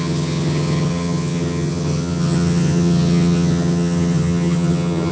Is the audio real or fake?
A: fake